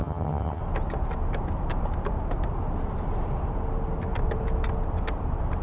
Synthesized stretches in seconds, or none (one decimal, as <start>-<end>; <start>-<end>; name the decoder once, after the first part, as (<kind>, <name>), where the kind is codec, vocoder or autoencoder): 0.0-0.6 (vocoder, HiFi-GAN)